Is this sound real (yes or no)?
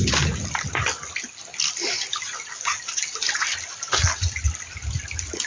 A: yes